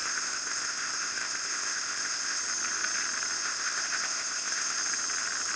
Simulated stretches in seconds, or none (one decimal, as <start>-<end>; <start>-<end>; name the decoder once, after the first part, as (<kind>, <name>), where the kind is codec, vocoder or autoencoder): 0.0-2.4 (codec, ZipCodec); 3.4-4.8